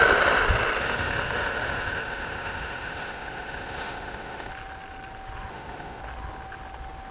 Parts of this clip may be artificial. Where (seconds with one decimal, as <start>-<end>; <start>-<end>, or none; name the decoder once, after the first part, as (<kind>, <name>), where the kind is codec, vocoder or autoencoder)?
0.8-4.5 (autoencoder, DAC-VAE); 5.5-6.0